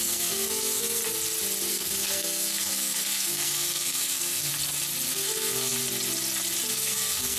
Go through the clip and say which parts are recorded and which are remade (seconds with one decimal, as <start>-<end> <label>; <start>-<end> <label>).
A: 0.0-1.0 remade; 1.0-1.7 recorded; 1.7-4.5 remade; 4.5-5.1 recorded; 5.1-5.7 remade; 5.7-6.7 recorded; 6.7-7.4 remade